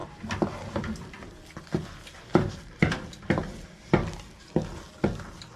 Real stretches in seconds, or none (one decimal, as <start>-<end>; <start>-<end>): 0.0-5.6